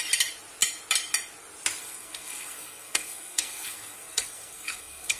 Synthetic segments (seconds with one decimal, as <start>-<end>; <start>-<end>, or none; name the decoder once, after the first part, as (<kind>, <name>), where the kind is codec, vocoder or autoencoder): 1.8-5.2 (codec, SNAC)